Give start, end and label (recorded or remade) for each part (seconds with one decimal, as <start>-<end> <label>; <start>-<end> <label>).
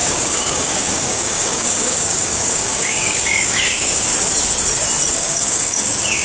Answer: 0.0-4.1 remade; 4.1-5.1 recorded; 5.1-6.2 remade